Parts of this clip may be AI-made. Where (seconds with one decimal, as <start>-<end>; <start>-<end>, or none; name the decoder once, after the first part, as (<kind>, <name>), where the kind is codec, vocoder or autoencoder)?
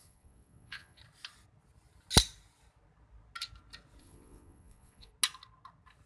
0.0-1.0 (vocoder, Vocos); 4.0-5.1